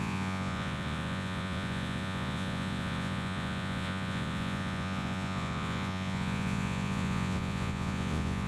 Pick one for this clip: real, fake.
fake